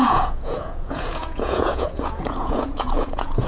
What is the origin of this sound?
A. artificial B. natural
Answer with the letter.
A